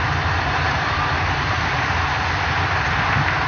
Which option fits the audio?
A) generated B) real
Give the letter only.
A